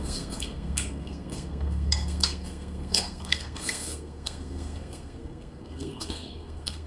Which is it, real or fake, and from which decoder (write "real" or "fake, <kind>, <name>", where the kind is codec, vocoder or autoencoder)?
fake, codec, SNAC